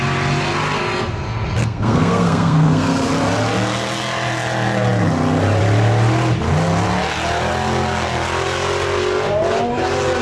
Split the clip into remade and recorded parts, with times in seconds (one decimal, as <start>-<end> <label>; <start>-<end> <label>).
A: 0.0-1.6 recorded; 1.6-3.1 remade; 3.1-10.2 recorded